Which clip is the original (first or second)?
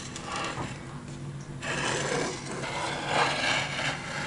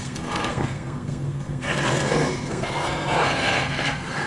first